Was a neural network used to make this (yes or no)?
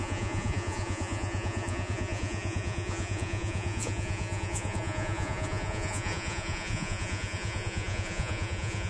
yes